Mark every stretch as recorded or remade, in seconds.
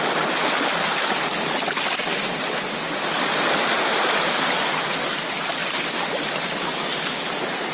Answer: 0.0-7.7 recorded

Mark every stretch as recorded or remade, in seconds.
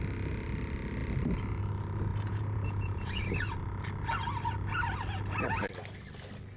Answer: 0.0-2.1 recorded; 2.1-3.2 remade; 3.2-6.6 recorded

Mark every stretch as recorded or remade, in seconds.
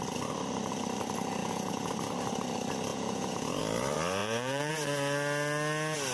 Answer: 0.0-1.4 recorded; 1.4-1.9 remade; 1.9-2.9 recorded; 2.9-3.6 remade; 3.6-4.2 recorded; 4.2-4.7 remade; 4.7-6.1 recorded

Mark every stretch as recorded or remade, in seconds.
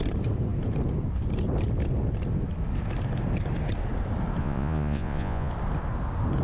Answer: 0.0-4.4 recorded; 4.4-5.5 remade; 5.5-6.4 recorded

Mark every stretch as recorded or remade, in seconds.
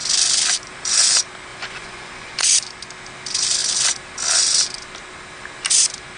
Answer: 0.0-1.5 recorded; 1.5-2.4 remade; 2.4-6.2 recorded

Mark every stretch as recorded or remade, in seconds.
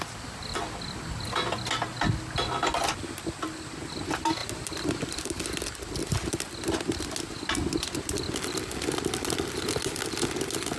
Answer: 0.0-10.8 recorded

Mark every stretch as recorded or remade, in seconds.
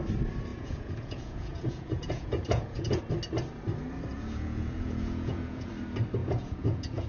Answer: 0.0-0.5 recorded; 0.5-3.0 remade; 3.0-4.1 recorded; 4.1-5.7 remade; 5.7-6.2 recorded; 6.2-7.1 remade